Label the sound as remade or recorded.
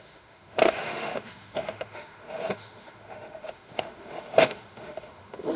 remade